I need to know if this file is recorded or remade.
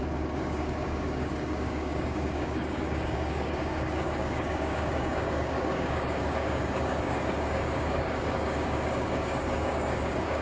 remade